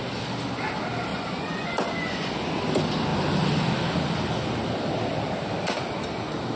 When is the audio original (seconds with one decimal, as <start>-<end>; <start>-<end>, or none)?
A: 0.0-1.1; 2.3-6.6